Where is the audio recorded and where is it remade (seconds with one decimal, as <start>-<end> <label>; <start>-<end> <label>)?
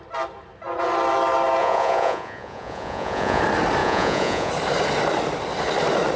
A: 0.0-1.6 recorded; 1.6-3.4 remade; 3.4-3.8 recorded; 3.8-4.5 remade; 4.5-6.2 recorded